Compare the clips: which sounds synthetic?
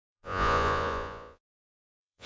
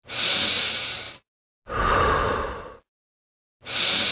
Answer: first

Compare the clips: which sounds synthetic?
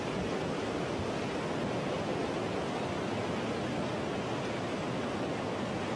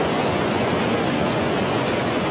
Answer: second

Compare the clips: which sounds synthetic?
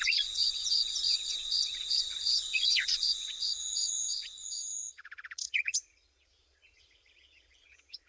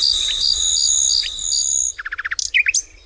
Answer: first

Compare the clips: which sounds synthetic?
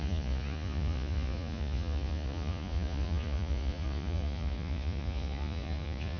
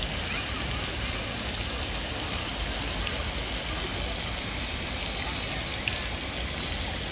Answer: first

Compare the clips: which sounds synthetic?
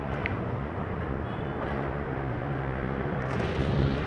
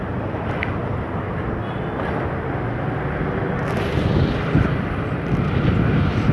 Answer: first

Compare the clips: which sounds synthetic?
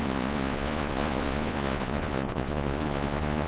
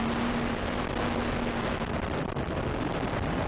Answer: first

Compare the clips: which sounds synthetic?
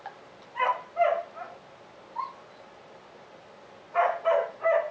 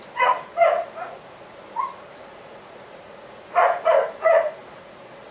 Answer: second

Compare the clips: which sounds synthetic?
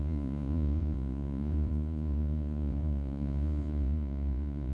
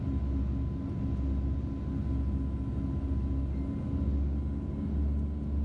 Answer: first